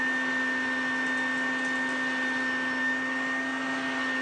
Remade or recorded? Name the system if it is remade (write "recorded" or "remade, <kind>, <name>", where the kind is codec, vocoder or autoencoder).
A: recorded